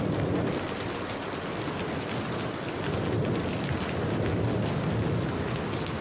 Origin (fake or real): real